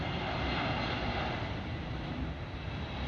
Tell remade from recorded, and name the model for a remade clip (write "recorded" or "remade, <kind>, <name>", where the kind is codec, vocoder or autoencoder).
recorded